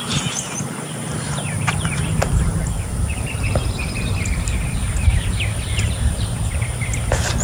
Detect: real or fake fake